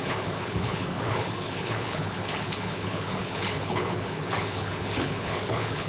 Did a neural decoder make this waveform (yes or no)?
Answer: yes